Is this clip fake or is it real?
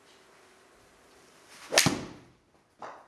real